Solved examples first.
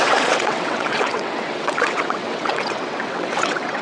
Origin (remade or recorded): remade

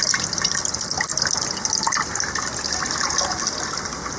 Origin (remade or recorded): recorded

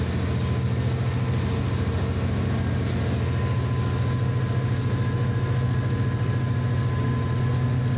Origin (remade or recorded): recorded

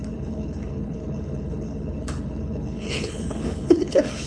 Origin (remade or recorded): remade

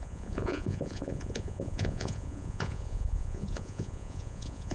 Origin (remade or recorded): remade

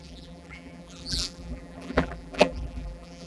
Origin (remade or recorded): remade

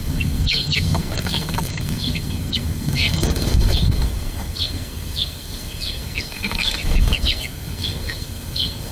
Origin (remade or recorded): remade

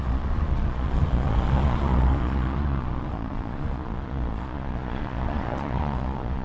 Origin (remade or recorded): remade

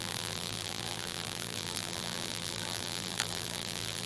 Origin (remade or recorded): remade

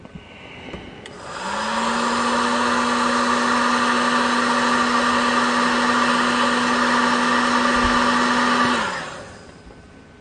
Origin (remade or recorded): recorded